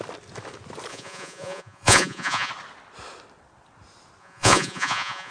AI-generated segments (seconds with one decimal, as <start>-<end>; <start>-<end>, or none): 0.9-2.5; 4.2-5.3